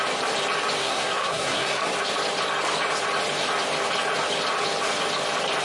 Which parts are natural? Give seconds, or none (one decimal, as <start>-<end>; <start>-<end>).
0.0-0.8; 1.8-5.6